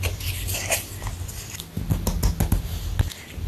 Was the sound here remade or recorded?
recorded